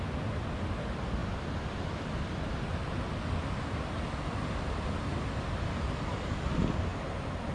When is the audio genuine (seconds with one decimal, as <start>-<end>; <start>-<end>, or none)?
0.0-7.5